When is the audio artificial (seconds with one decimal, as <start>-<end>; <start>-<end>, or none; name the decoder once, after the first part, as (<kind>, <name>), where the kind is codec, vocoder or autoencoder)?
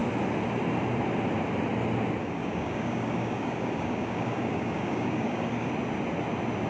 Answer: 2.2-5.7 (codec, DAC)